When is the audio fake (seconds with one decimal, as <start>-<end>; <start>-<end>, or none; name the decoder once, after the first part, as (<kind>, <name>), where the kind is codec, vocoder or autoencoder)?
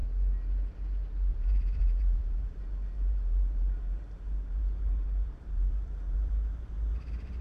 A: 1.3-7.4 (vocoder, BigVGAN v2)